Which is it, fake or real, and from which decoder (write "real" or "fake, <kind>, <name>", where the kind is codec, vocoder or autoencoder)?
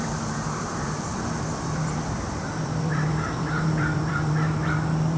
fake, vocoder, BigVGAN v2